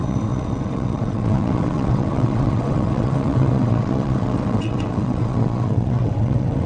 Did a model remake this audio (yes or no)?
yes